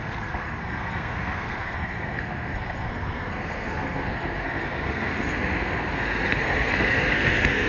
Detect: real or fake fake